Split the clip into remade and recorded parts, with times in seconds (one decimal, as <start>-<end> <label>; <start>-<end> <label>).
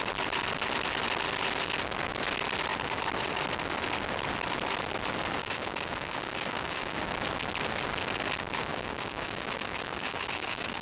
0.0-5.4 recorded; 5.4-7.0 remade; 7.0-8.7 recorded; 8.7-10.8 remade